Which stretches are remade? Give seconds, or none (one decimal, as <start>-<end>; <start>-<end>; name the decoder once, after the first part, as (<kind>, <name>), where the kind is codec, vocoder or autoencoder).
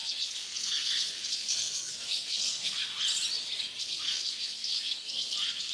0.0-2.9 (codec, SNAC); 3.8-5.7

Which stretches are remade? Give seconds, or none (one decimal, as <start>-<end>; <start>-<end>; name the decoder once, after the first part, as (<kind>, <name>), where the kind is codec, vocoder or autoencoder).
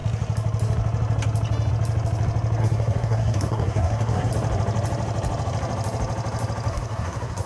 2.6-4.3 (codec, SNAC); 6.7-7.5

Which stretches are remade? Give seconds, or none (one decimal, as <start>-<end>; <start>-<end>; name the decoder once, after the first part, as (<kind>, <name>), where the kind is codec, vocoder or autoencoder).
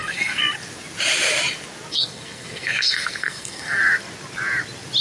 0.0-0.4 (codec, SNAC); 1.9-3.8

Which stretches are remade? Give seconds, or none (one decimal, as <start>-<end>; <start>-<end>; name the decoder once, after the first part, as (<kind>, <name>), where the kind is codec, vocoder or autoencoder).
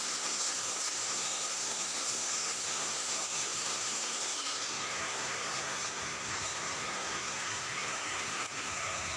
0.0-9.2 (codec, SNAC)